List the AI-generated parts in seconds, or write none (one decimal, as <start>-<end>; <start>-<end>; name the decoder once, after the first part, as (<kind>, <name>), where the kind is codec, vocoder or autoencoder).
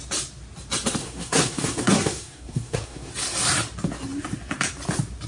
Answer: 1.0-3.1 (codec, SNAC)